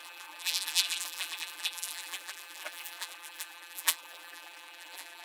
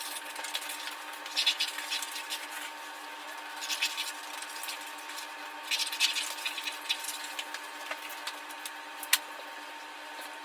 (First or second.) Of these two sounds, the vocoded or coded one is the first